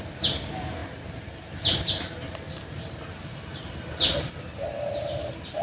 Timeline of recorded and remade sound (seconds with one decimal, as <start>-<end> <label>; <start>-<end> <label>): 0.0-5.6 recorded